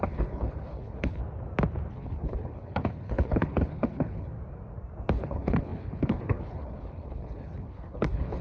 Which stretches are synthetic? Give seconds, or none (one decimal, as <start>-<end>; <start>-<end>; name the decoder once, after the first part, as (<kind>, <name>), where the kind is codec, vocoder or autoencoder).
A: 0.0-1.2 (codec, HILCodec); 1.9-4.3; 5.1-8.4